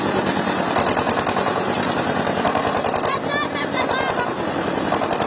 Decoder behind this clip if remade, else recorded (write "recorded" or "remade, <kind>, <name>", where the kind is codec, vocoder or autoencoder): recorded